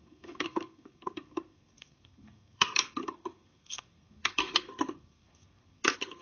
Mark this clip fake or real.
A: fake